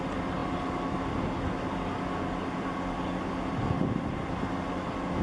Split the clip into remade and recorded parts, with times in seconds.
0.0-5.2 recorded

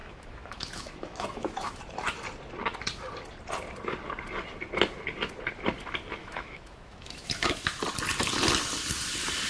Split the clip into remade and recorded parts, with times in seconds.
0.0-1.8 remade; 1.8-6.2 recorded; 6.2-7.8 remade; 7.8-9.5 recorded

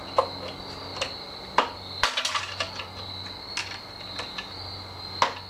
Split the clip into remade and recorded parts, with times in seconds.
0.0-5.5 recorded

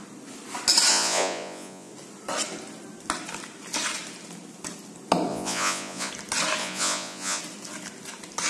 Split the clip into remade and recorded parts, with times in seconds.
0.0-0.9 recorded; 0.9-1.9 remade; 1.9-5.3 recorded; 5.3-6.1 remade; 6.1-6.6 recorded; 6.6-7.4 remade; 7.4-8.5 recorded

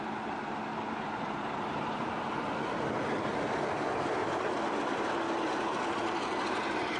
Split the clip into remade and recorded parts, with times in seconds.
0.0-0.7 recorded; 0.7-2.8 remade; 2.8-7.0 recorded